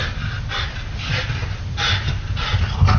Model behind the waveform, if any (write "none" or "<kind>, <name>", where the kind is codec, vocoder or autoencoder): none